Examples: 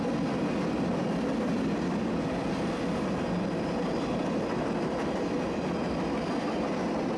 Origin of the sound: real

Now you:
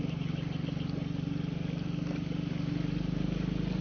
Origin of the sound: real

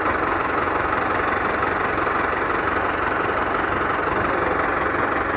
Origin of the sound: real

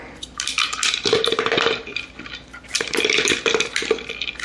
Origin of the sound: real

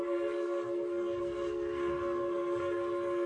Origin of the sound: fake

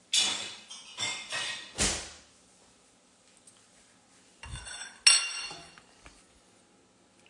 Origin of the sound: real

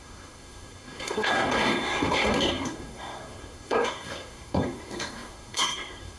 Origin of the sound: fake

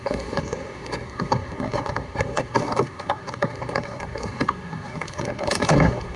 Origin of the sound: fake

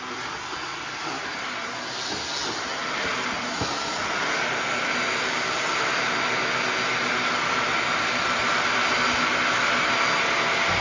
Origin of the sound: real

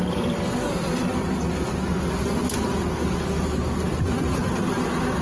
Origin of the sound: real